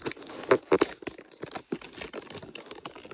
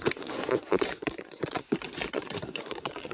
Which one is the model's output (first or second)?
second